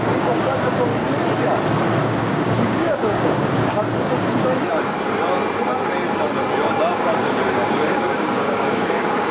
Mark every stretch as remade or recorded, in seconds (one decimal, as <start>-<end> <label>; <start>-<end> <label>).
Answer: 0.0-0.9 remade; 0.9-2.0 recorded; 2.0-3.8 remade; 3.8-6.9 recorded; 6.9-9.3 remade